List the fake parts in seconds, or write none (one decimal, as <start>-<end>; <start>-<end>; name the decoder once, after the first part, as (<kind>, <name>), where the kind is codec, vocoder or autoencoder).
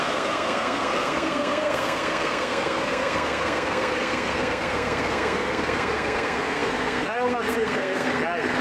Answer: 0.0-8.6 (codec, SNAC)